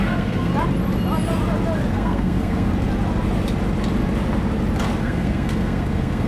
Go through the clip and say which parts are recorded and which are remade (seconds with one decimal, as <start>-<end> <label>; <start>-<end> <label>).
0.0-0.5 remade; 0.5-1.9 recorded; 1.9-2.7 remade; 2.7-5.0 recorded; 5.0-6.3 remade

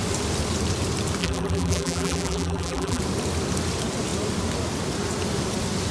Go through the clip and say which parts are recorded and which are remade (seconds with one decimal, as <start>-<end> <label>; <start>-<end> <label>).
0.0-1.2 recorded; 1.2-3.0 remade; 3.0-5.9 recorded

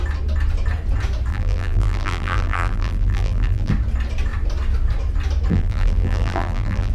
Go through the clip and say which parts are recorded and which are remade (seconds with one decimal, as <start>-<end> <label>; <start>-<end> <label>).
0.0-1.3 recorded; 1.3-3.7 remade; 3.7-5.5 recorded; 5.5-6.9 remade

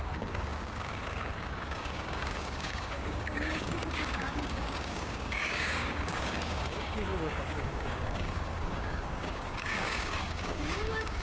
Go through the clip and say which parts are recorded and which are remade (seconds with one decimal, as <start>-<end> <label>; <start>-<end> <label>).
0.0-11.2 remade

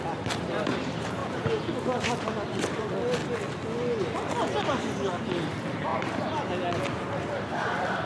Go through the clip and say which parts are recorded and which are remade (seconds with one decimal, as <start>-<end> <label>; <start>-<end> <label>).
0.0-1.2 recorded; 1.2-1.7 remade; 1.7-8.1 recorded